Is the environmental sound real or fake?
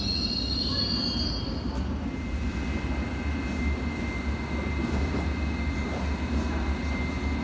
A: real